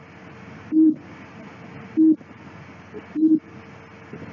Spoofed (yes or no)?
no